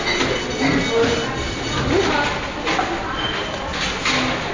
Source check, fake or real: real